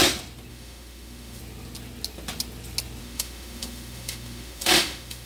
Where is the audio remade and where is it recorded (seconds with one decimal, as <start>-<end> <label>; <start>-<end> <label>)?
0.0-0.5 recorded; 0.5-1.4 remade; 1.4-3.0 recorded; 3.0-5.3 remade